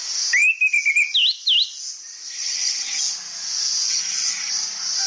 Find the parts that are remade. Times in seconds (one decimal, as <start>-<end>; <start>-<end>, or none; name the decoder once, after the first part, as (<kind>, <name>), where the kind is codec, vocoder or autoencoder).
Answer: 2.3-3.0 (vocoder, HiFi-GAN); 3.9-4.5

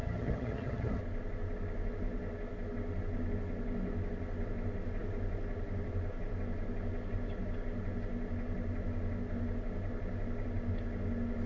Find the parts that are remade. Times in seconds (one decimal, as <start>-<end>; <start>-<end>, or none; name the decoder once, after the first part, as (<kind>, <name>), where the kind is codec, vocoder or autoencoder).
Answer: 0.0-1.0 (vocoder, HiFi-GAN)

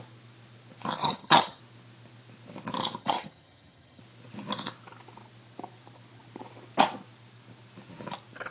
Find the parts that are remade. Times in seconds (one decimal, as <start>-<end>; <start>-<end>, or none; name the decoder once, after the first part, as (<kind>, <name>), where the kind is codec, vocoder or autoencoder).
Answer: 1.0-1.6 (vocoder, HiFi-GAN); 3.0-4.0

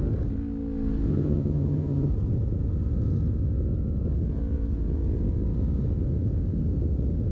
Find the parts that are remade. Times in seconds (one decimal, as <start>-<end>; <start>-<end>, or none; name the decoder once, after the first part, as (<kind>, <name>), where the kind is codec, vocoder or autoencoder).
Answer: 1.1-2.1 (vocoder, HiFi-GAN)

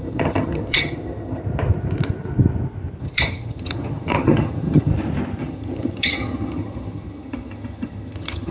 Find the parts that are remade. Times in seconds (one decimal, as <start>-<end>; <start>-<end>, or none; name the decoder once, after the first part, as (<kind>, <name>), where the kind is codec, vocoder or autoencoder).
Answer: 0.0-1.4 (vocoder, HiFi-GAN); 3.0-4.9; 5.4-8.5

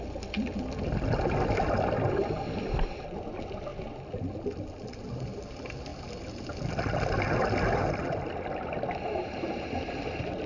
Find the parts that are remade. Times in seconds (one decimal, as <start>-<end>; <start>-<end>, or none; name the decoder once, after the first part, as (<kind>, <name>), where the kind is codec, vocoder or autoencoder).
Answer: none

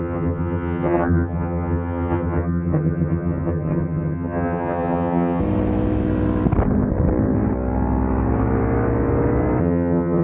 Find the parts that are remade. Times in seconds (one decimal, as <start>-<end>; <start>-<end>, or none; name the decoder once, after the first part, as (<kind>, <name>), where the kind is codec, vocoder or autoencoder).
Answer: 0.0-5.4 (vocoder, HiFi-GAN); 9.6-10.2

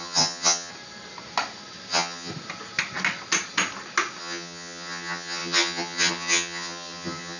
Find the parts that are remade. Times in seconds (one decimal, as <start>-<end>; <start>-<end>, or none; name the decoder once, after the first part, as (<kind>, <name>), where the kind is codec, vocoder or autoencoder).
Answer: 0.0-0.7 (vocoder, HiFi-GAN); 1.9-2.3; 4.2-7.4